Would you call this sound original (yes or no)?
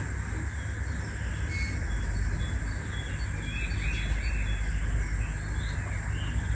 yes